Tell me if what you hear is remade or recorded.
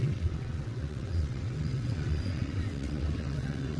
remade